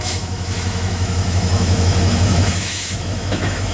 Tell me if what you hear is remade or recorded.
remade